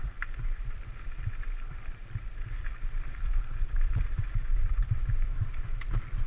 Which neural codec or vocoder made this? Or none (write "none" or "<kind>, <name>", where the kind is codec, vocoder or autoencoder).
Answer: vocoder, BigVGAN v2